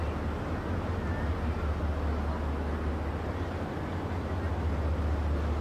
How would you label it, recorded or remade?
recorded